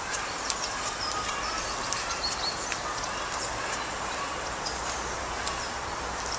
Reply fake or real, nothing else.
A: real